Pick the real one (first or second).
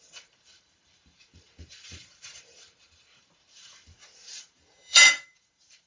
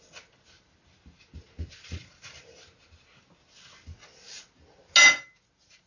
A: second